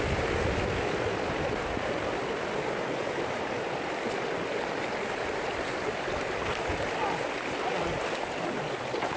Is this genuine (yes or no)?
yes